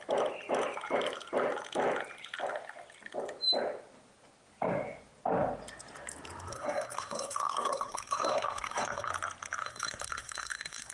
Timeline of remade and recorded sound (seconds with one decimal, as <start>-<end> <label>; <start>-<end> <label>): 0.0-6.5 recorded; 6.5-9.1 remade; 9.1-9.6 recorded; 9.6-10.9 remade